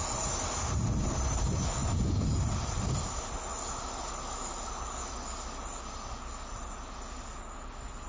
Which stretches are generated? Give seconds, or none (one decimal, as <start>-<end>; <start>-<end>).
none

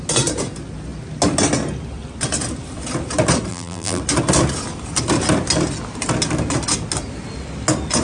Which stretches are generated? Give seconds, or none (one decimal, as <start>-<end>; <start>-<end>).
3.5-4.0